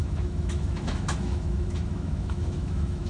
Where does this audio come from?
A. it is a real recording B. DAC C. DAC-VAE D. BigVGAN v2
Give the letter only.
C